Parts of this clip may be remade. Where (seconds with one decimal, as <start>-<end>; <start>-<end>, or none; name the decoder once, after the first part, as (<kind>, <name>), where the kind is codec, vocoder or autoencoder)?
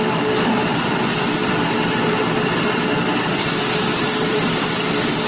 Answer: 3.8-4.4 (vocoder, BigVGAN v2)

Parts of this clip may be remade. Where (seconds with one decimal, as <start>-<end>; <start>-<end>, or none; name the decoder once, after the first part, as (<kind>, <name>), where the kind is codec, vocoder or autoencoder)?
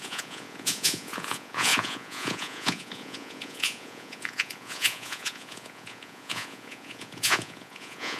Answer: 0.0-8.2 (vocoder, Vocos)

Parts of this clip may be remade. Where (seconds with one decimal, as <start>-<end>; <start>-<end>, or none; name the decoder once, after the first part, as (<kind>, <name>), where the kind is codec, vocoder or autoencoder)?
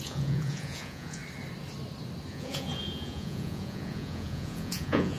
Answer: 0.0-1.2 (vocoder, Vocos); 2.3-5.2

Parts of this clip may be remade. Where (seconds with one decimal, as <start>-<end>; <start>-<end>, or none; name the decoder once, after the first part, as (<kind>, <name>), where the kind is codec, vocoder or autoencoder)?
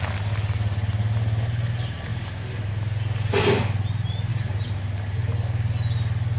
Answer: 4.3-4.8 (vocoder, BigVGAN v2)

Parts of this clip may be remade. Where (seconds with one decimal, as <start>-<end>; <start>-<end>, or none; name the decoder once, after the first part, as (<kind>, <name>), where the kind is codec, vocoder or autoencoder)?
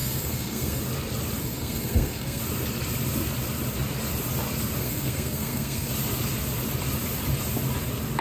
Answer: 0.0-0.8 (codec, SNAC); 1.4-2.4; 4.8-5.9